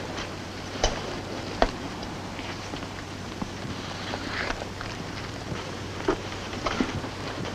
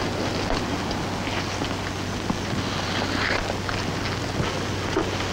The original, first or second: second